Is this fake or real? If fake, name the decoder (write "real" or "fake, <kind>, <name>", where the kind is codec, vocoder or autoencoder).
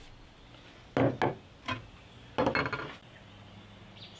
real